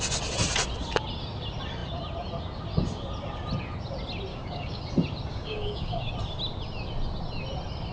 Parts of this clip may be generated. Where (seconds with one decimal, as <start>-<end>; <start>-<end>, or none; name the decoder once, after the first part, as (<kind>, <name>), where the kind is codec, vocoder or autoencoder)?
4.3-4.8 (codec, DAC); 5.3-6.1